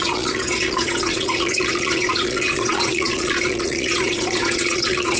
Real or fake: fake